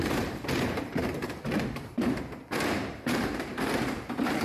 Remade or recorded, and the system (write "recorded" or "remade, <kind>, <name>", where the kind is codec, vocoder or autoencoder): remade, vocoder, BigVGAN v2